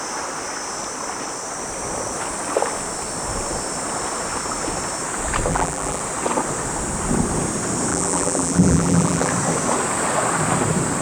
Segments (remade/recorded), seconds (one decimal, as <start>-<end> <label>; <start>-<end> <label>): 0.0-5.5 recorded; 5.5-6.0 remade; 6.0-7.9 recorded; 7.9-9.3 remade; 9.3-11.0 recorded